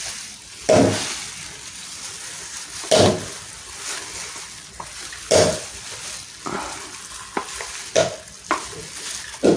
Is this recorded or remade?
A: recorded